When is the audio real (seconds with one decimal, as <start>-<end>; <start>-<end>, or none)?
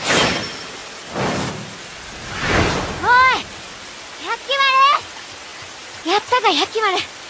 0.0-7.3